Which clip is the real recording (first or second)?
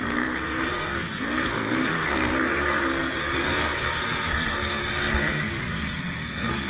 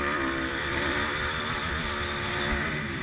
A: second